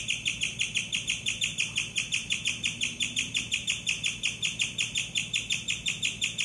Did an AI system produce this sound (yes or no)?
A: no